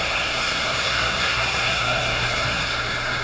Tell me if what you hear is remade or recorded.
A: remade